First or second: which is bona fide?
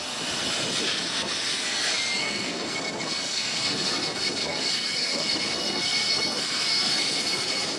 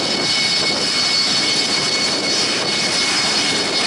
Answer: second